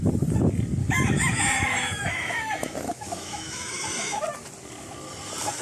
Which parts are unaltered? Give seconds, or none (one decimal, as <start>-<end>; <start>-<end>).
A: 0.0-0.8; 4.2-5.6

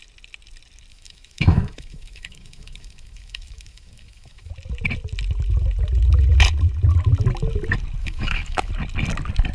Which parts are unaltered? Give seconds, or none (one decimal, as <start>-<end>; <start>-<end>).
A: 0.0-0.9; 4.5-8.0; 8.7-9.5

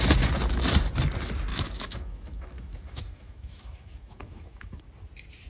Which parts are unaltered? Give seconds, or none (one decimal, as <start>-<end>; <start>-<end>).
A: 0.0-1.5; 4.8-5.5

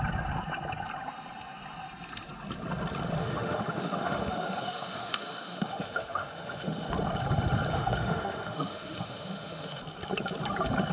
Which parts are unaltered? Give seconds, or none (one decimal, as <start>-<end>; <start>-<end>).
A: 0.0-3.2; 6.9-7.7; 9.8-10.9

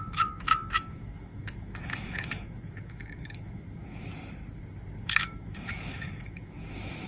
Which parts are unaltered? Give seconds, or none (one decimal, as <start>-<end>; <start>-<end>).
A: 4.1-5.0